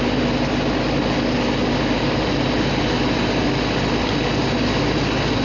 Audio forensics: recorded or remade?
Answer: recorded